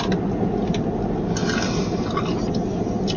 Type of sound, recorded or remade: recorded